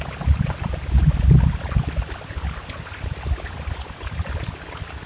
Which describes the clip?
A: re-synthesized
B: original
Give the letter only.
B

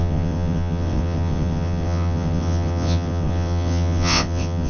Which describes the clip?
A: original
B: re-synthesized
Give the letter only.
B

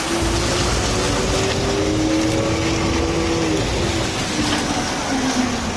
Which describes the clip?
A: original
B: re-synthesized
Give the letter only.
A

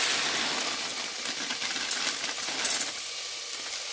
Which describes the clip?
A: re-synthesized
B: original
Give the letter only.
B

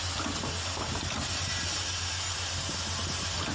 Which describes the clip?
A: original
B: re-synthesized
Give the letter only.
A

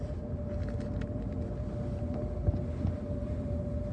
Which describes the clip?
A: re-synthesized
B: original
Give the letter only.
B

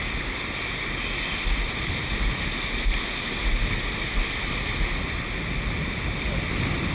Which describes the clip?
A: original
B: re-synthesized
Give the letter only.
A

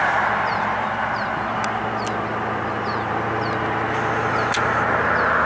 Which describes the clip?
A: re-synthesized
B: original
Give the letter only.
B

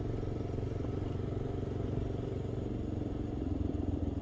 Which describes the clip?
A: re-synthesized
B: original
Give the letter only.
B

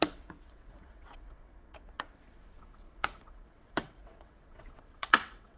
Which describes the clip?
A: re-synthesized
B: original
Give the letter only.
A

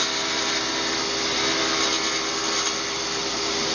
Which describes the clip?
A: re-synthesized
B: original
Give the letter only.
B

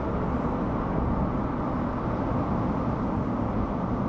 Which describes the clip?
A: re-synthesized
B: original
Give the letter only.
B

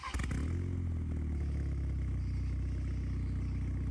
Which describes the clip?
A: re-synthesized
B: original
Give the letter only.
B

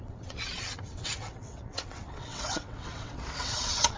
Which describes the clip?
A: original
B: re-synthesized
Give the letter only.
B